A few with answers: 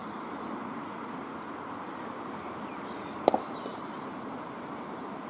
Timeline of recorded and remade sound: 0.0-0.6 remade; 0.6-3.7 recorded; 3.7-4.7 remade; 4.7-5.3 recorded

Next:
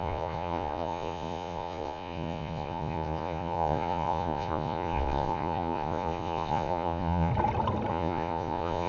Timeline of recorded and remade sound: 0.0-7.3 remade; 7.3-7.9 recorded; 7.9-8.9 remade

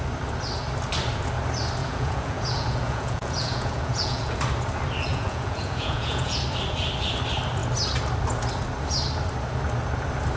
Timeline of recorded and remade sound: 0.0-1.8 recorded; 1.8-4.4 remade; 4.4-5.1 recorded; 5.1-6.4 remade; 6.4-10.4 recorded

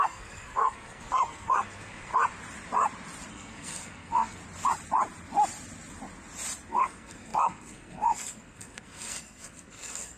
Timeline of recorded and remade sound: 0.0-2.1 remade; 2.1-3.3 recorded; 3.3-4.4 remade; 4.4-6.7 recorded; 6.7-10.2 remade

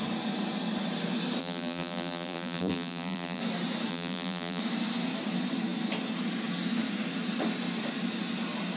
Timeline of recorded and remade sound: 0.0-1.4 recorded; 1.4-3.4 remade; 3.4-3.9 recorded; 3.9-4.6 remade; 4.6-8.8 recorded